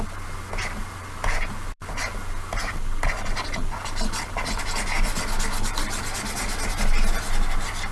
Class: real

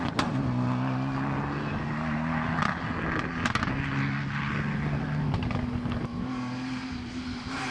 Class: real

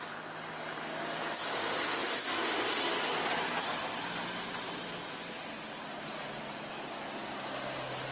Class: real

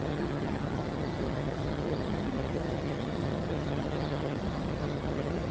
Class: fake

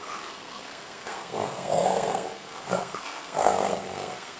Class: fake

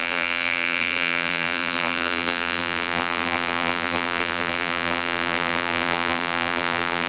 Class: fake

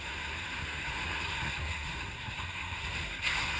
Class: fake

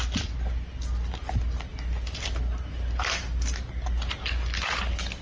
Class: real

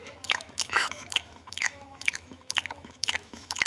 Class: fake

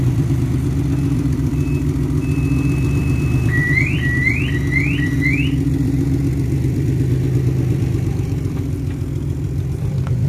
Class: fake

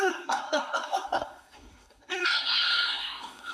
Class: fake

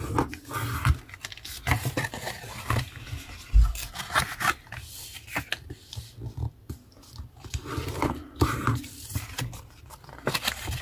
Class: real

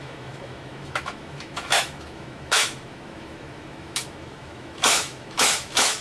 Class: fake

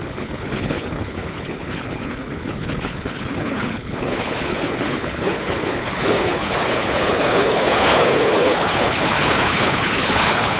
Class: fake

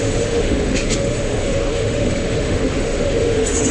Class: fake